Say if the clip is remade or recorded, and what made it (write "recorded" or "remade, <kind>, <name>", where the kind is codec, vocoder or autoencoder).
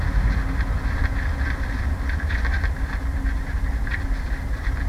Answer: recorded